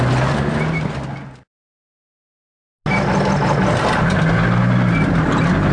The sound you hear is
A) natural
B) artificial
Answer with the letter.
A